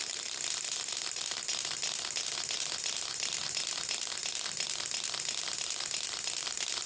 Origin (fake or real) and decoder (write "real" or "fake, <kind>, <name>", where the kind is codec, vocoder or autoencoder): real